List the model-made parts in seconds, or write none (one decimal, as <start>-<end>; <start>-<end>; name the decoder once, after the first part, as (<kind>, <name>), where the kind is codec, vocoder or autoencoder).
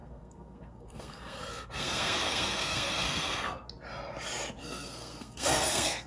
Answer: 0.0-3.7 (codec, SNAC); 4.6-6.1